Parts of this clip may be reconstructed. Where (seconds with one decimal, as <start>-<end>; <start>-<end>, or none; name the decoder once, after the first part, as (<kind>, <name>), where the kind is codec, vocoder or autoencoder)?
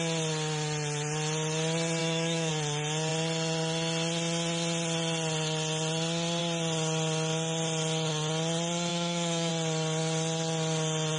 2.0-2.5 (autoencoder, DAC-VAE); 8.9-9.5